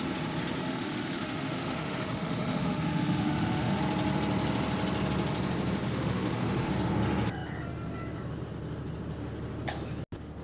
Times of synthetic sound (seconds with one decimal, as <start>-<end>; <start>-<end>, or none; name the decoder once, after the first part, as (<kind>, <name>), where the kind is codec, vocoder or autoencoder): 0.6-3.8 (autoencoder, DAC-VAE); 5.9-6.7